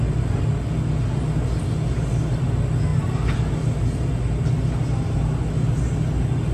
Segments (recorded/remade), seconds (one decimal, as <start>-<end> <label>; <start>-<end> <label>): 0.0-6.5 recorded

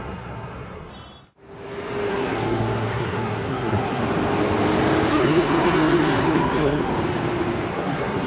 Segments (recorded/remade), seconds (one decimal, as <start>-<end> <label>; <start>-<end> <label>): 0.0-0.9 remade; 0.9-2.1 recorded; 2.1-4.0 remade; 4.0-5.1 recorded; 5.1-6.9 remade; 6.9-7.7 recorded; 7.7-8.3 remade

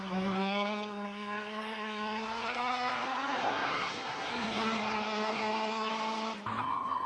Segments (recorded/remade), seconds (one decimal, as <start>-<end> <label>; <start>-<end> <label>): 0.0-5.9 remade; 5.9-6.6 recorded; 6.6-7.1 remade

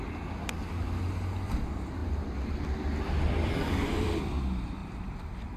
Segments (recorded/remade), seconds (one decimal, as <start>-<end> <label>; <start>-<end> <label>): 0.0-2.0 recorded; 2.0-4.2 remade; 4.2-4.8 recorded; 4.8-5.6 remade

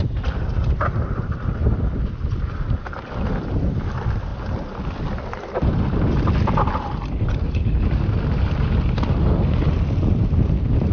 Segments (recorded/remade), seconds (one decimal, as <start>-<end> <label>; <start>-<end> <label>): 0.0-10.9 recorded

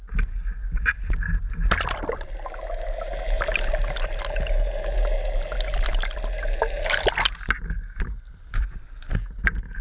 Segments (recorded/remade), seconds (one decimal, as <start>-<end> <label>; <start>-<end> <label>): 0.0-9.8 recorded

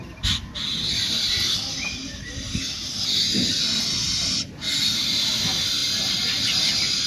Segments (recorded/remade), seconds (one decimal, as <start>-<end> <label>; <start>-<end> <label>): 0.0-7.1 recorded